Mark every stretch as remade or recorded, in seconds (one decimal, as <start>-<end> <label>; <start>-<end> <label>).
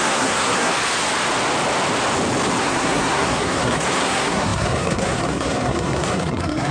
0.0-0.7 remade; 0.7-2.6 recorded; 2.6-6.7 remade